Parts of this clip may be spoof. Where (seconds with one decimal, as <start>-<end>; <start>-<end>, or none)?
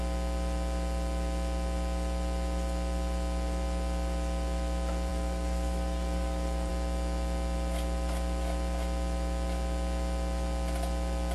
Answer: 5.1-6.7